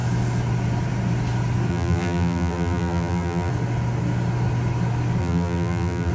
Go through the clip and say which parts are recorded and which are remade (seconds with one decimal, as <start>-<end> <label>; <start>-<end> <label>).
0.0-1.7 recorded; 1.7-3.5 remade; 3.5-5.2 recorded; 5.2-6.1 remade